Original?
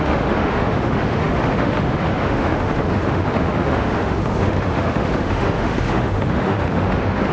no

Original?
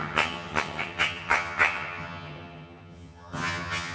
no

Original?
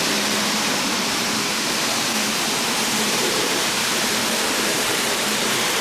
no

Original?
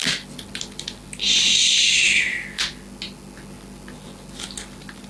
yes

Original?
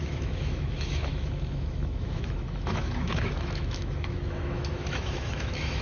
no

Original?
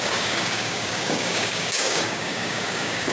no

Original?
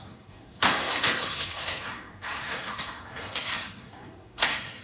no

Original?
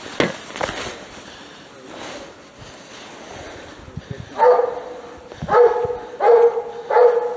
yes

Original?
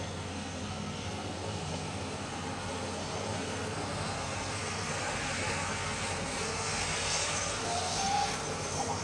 no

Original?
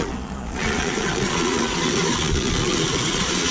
no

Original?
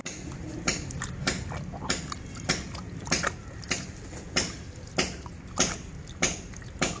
yes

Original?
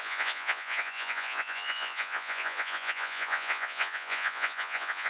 no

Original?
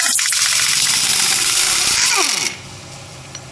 no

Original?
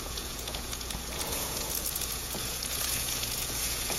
no